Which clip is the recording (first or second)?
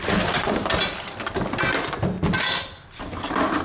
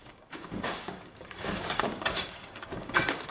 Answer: first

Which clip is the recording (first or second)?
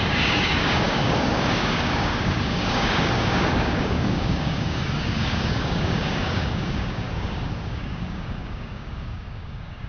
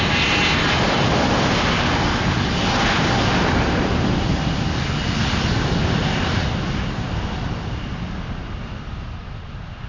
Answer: second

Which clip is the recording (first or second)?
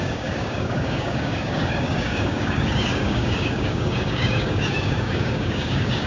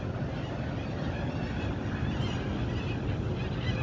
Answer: second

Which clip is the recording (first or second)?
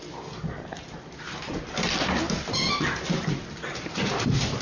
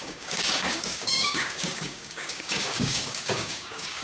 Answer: first